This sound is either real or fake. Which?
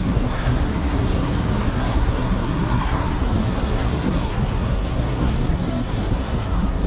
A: fake